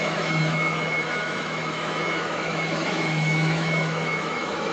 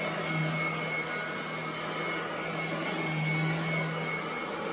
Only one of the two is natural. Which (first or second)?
second